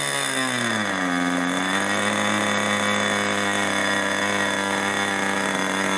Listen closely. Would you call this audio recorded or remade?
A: recorded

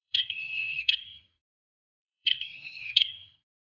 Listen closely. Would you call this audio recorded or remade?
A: remade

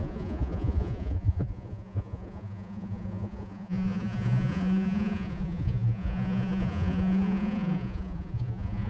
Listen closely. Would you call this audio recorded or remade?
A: remade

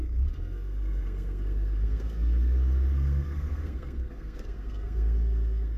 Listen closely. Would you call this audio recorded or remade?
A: remade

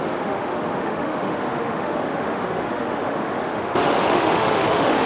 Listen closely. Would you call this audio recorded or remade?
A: remade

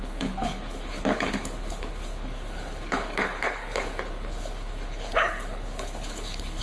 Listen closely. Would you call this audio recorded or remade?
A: remade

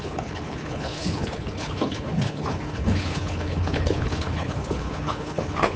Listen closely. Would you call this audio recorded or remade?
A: remade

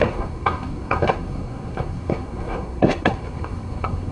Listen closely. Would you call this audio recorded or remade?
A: remade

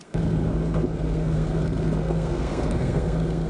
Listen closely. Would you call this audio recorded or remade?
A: remade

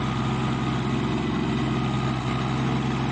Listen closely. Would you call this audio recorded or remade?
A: recorded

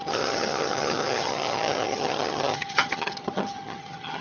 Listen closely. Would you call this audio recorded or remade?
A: remade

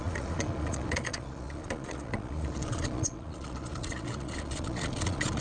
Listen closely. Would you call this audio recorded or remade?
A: remade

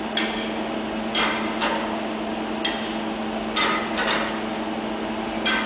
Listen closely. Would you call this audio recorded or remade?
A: recorded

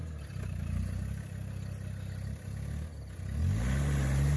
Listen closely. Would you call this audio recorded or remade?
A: recorded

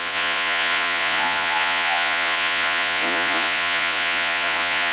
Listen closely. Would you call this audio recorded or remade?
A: remade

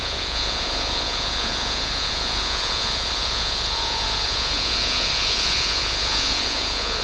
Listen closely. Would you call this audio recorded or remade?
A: remade